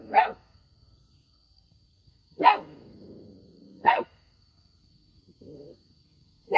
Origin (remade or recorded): remade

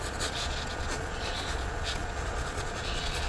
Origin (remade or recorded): remade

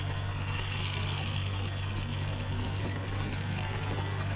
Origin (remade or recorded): remade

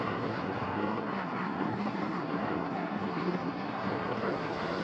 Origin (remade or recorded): remade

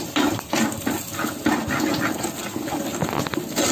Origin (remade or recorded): recorded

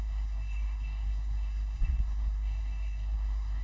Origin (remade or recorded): remade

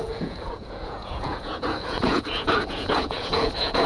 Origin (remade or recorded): remade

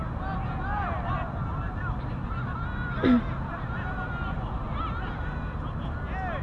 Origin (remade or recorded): recorded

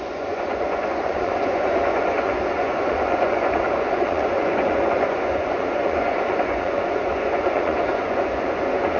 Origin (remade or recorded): remade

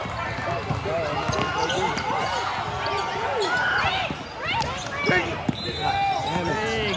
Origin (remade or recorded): recorded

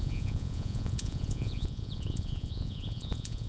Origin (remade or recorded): remade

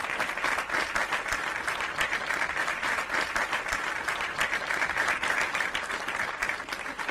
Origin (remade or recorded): recorded